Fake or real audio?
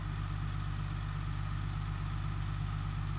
real